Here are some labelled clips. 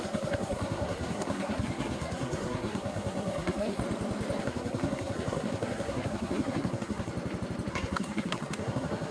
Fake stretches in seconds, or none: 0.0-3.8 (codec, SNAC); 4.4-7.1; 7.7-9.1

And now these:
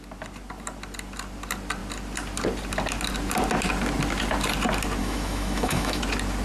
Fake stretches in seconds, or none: 5.0-6.0 (autoencoder, DAC-VAE)

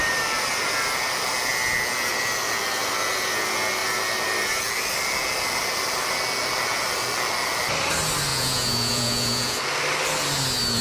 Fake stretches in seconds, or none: 8.3-9.6 (vocoder, Vocos)

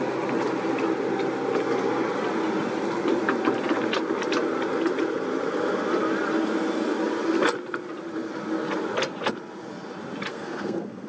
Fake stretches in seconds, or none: 10.3-11.1 (codec, SNAC)